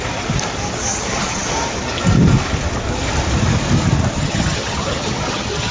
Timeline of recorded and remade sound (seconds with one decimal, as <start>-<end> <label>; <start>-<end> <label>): 0.0-0.9 recorded; 0.9-1.5 remade; 1.5-4.2 recorded; 4.2-5.7 remade